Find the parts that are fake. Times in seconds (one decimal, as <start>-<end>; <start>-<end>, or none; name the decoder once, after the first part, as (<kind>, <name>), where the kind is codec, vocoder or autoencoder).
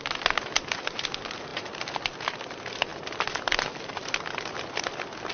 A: none